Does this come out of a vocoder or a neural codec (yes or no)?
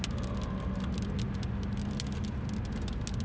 no